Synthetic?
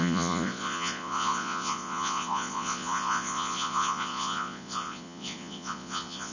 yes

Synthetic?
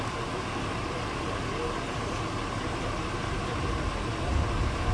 no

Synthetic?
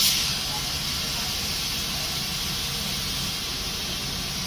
no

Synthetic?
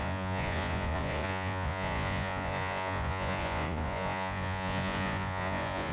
yes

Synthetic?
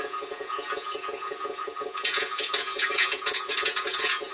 yes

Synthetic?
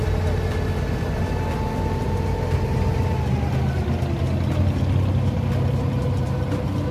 no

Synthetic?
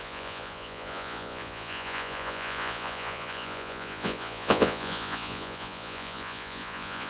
yes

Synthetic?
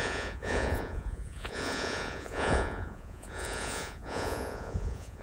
yes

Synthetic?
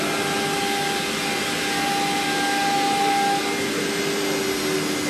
no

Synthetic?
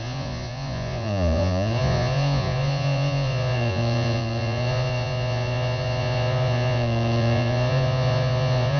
yes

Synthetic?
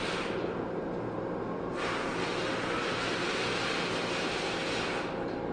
no